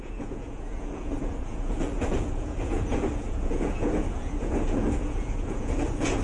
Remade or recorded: remade